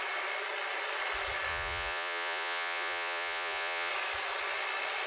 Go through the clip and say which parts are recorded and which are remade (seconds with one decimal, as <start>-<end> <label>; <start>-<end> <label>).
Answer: 0.0-1.5 recorded; 1.5-3.9 remade; 3.9-5.1 recorded